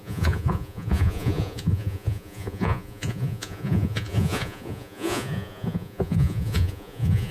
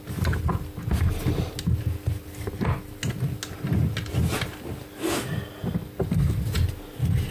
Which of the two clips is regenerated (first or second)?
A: first